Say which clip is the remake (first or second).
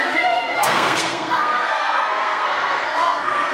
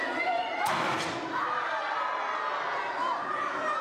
first